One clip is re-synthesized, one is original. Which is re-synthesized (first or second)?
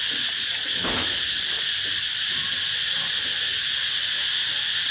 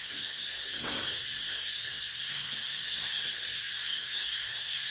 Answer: second